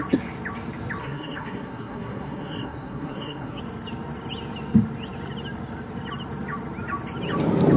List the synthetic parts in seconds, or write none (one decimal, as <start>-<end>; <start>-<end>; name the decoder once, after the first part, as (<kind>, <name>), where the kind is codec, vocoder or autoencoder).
1.0-3.6 (codec, SNAC)